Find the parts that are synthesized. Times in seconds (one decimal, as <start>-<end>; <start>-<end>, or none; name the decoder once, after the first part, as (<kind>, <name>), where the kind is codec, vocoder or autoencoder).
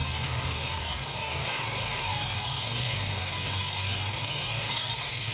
0.0-5.3 (codec, DAC)